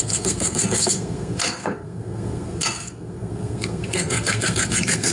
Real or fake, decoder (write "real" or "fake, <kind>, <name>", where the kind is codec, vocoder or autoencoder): fake, codec, SNAC